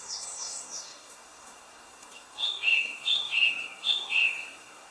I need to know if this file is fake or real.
fake